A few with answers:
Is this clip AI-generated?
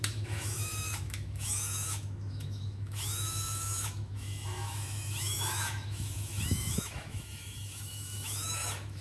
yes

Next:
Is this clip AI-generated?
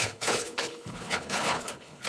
yes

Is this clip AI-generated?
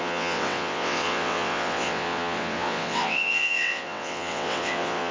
yes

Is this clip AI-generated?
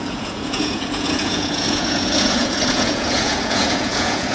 yes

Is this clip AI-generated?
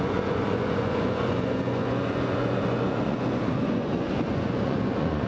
yes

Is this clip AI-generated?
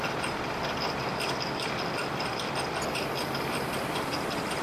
yes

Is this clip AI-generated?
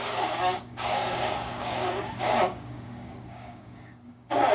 yes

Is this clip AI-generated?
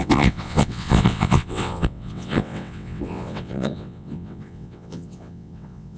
yes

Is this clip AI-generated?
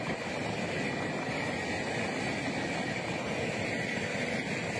no